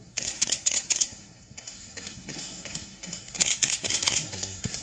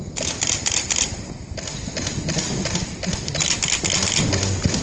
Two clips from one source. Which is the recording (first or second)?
second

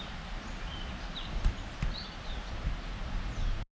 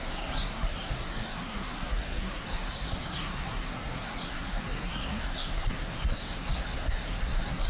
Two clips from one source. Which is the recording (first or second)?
first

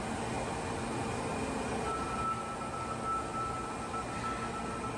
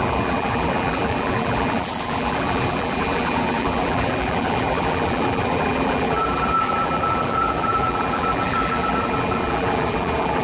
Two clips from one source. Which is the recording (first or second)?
first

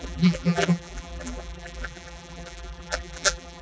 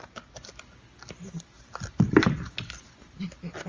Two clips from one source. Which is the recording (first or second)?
second